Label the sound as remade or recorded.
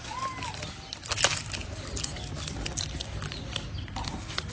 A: recorded